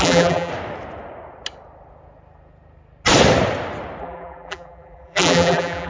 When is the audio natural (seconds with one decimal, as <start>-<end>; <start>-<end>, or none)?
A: 0.5-4.0